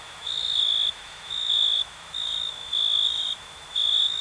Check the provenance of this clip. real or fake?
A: fake